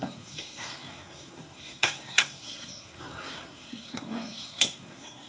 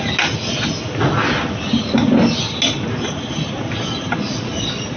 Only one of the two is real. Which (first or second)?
second